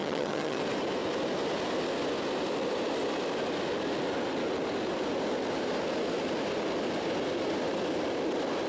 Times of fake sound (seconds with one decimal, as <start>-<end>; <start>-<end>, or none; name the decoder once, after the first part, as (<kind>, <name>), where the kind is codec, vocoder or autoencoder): 0.0-0.6 (vocoder, HiFi-GAN)